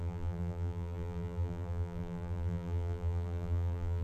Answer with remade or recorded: remade